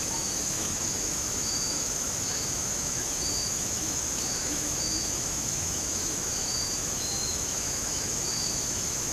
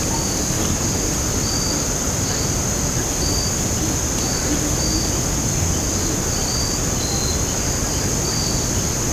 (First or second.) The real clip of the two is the second